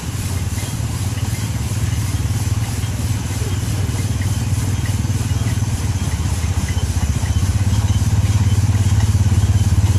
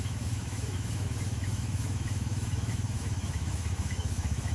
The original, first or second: first